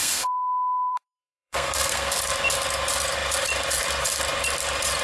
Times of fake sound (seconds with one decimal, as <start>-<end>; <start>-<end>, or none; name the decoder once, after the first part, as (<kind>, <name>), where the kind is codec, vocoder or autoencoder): 0.0-2.2 (codec, SNAC)